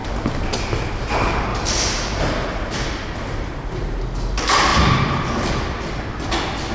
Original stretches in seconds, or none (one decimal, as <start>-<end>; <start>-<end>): 0.0-1.5; 2.2-4.7; 5.4-6.7